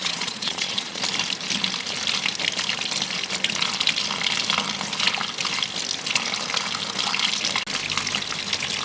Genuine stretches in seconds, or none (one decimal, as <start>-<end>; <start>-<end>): 1.0-8.8